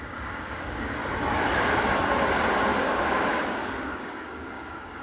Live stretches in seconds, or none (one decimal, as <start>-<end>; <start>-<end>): 1.0-2.8